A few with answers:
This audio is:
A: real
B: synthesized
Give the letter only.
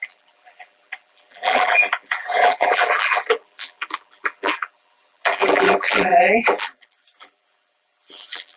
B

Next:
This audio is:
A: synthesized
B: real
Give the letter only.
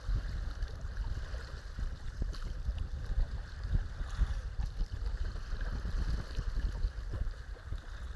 A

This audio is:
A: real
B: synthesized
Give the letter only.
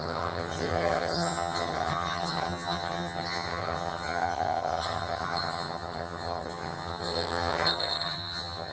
B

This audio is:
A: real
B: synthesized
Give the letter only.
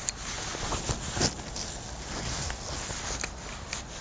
A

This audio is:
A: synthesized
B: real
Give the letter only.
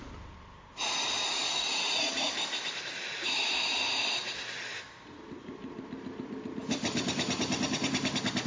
B